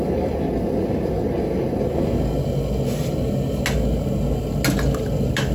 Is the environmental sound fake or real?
real